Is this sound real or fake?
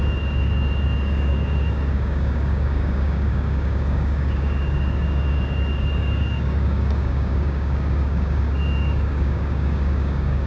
fake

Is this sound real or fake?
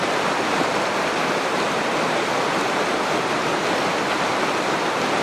real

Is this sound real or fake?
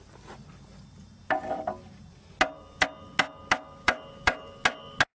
real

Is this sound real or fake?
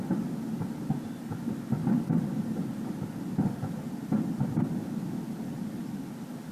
real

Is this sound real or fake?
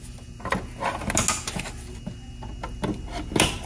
real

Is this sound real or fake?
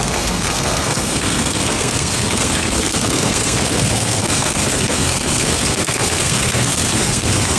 fake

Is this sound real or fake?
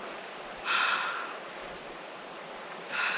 real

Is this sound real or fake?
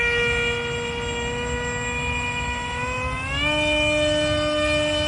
real